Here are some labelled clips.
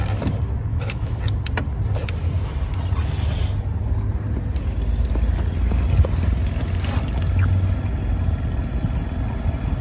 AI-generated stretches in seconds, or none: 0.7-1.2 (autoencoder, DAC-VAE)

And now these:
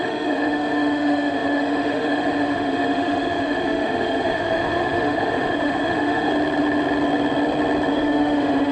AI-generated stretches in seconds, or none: 0.0-6.3 (autoencoder, DAC-VAE); 7.9-8.7

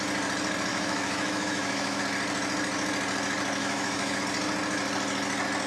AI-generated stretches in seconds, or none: 0.7-2.0 (autoencoder, DAC-VAE); 3.6-4.2

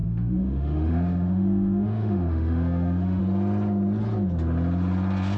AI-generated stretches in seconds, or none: 0.0-3.2 (autoencoder, DAC-VAE)

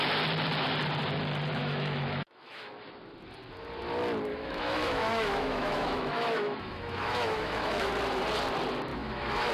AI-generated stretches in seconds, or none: 1.6-2.7 (autoencoder, DAC-VAE); 4.3-7.9; 8.9-9.5